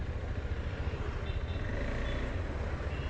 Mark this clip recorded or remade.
recorded